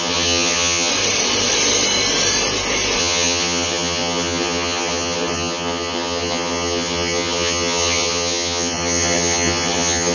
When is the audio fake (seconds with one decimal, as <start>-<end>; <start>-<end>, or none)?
0.0-0.9; 3.0-10.1